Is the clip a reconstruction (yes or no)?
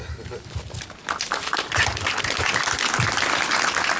no